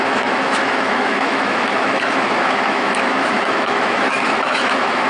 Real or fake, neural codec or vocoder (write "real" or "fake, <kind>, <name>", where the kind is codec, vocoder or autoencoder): fake, autoencoder, DAC-VAE